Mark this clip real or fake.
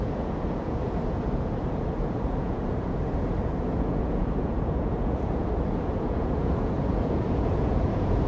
fake